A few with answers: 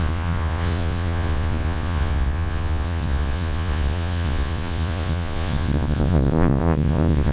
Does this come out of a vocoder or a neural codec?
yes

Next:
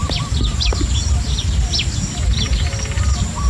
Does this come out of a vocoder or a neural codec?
no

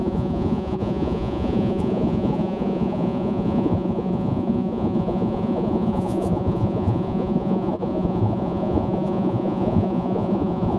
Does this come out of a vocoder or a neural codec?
yes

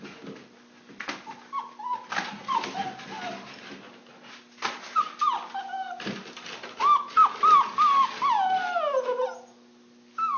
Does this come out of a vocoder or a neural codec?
no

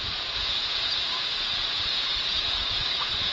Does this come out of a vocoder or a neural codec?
yes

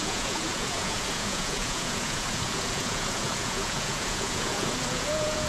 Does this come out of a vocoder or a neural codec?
yes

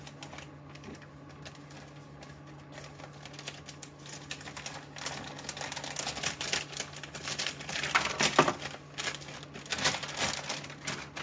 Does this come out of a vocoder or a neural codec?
no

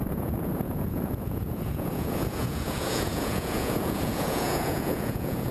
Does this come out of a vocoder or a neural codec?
yes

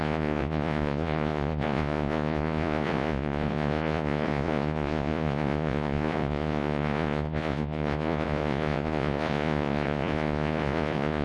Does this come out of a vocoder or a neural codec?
yes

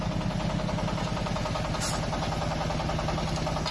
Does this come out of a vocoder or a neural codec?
no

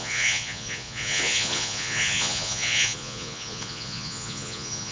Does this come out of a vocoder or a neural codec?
yes